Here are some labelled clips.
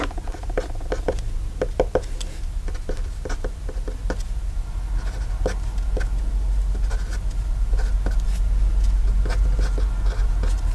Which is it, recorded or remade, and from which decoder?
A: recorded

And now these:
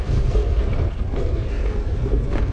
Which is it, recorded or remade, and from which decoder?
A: remade, codec, SNAC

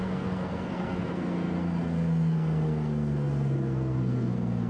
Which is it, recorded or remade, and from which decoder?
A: remade, codec, SNAC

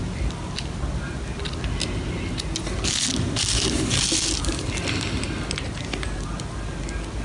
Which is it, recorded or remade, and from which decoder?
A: recorded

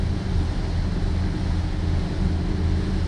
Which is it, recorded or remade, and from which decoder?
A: recorded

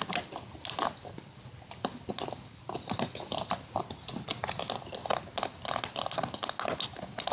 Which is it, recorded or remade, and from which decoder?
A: recorded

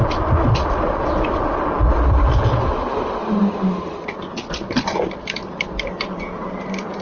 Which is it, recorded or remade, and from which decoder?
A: recorded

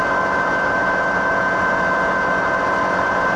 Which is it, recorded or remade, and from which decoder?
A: recorded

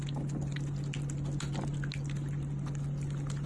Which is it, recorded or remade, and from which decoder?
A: recorded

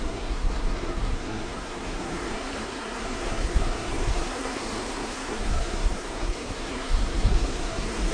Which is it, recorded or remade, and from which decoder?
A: remade, codec, SNAC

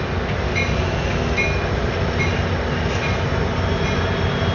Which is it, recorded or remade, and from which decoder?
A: recorded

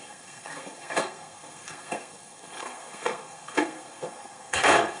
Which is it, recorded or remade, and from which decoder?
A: remade, codec, SNAC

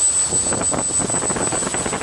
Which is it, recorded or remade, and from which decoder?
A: recorded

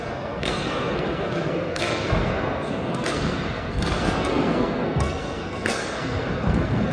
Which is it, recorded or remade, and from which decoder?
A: remade, codec, SNAC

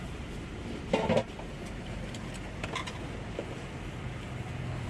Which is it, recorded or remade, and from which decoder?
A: recorded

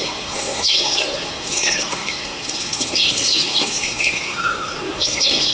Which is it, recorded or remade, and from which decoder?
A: remade, codec, SNAC